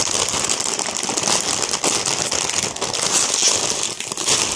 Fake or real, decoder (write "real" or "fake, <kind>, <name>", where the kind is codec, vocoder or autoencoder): real